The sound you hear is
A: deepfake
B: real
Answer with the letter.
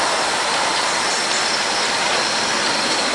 B